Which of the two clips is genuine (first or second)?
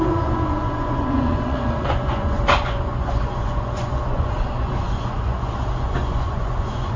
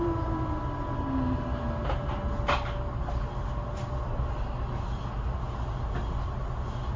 second